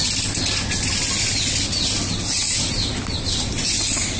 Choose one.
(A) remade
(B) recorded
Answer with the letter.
B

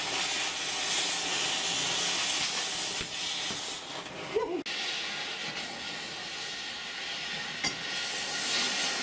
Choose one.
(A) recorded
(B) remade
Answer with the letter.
A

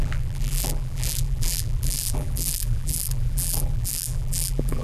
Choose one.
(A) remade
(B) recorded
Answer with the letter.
A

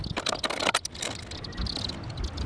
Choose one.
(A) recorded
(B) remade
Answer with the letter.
A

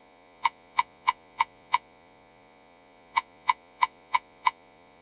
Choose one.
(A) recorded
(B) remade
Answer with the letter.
B